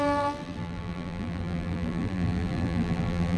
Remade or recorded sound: remade